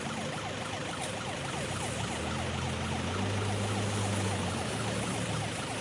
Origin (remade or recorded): recorded